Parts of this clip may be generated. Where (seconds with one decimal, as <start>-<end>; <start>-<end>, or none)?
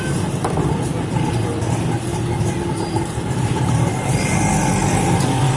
0.0-5.6